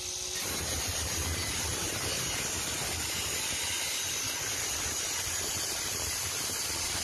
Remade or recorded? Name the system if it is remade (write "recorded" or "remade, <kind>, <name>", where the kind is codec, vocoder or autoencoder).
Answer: recorded